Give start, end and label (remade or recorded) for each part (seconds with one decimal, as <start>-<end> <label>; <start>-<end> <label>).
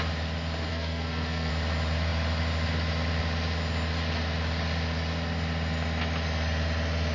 0.0-0.7 recorded; 0.7-1.5 remade; 1.5-7.1 recorded